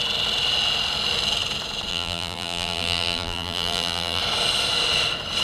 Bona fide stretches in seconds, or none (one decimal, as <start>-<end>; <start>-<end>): 0.0-1.9; 4.2-5.4

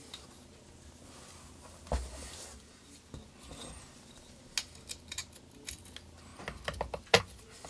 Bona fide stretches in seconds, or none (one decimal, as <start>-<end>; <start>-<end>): 0.0-7.7

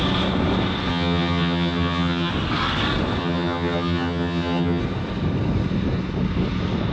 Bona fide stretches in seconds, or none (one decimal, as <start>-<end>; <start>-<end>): 0.0-0.9; 2.3-3.2; 4.8-6.9

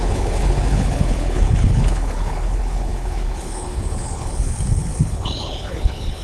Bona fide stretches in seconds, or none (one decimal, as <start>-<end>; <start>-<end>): none

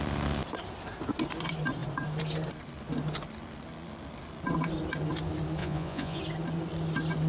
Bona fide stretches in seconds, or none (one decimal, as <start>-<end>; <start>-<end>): 0.0-5.6; 6.2-7.3